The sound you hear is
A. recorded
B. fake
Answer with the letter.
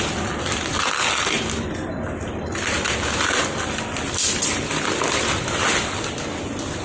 A